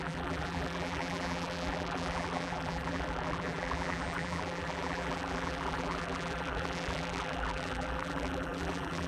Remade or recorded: remade